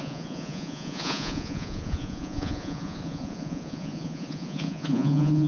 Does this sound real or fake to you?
fake